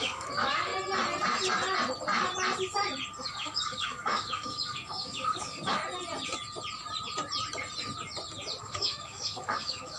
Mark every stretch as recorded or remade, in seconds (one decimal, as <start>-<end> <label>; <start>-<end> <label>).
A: 0.0-0.7 remade; 0.7-3.3 recorded; 3.3-5.8 remade; 5.8-8.6 recorded; 8.6-10.0 remade

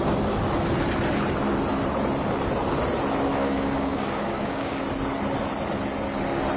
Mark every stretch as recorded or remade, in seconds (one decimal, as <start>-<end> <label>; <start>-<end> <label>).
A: 0.0-3.3 recorded; 3.3-4.8 remade; 4.8-6.6 recorded

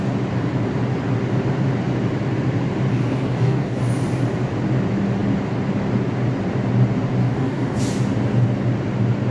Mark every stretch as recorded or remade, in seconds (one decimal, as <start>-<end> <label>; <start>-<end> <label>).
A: 0.0-2.9 recorded; 2.9-3.8 remade; 3.8-7.2 recorded; 7.2-7.8 remade; 7.8-9.3 recorded

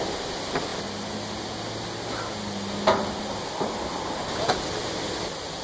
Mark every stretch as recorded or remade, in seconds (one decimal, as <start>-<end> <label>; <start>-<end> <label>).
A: 0.0-5.6 recorded

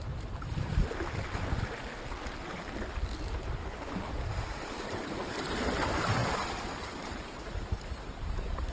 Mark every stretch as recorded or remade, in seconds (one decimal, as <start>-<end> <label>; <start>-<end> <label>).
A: 0.0-3.6 recorded; 3.6-4.3 remade; 4.3-8.7 recorded